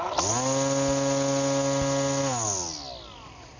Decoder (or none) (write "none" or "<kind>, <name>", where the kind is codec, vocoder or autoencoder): none